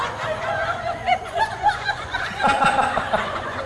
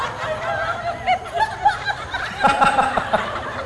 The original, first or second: second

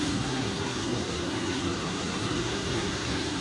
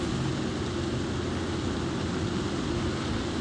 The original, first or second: second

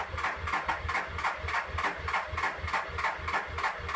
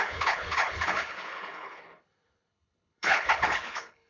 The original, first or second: first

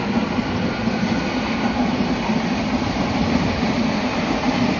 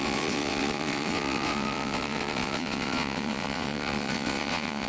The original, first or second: first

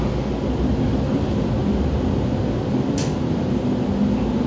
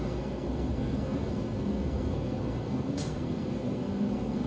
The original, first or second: first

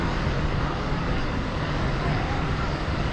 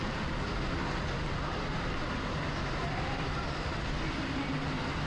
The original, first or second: second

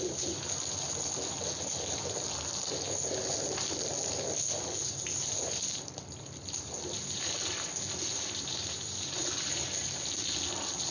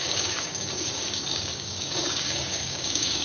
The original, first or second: first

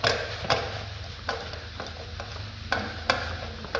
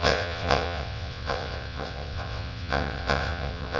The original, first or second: first